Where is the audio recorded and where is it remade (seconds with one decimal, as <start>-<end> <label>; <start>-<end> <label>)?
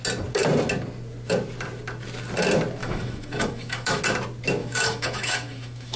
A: 0.0-2.8 recorded; 2.8-4.0 remade; 4.0-4.6 recorded; 4.6-6.0 remade